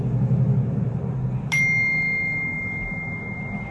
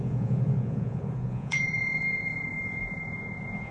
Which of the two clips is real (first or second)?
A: first